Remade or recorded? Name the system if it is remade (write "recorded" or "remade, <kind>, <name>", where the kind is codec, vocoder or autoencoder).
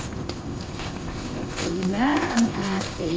remade, codec, ZipCodec